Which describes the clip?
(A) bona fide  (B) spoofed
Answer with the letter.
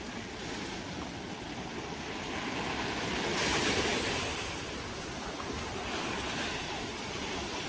A